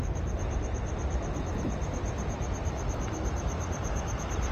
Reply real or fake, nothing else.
real